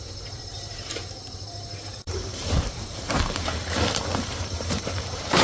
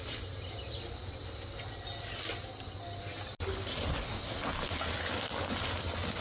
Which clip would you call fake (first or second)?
first